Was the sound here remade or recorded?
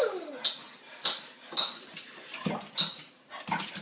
recorded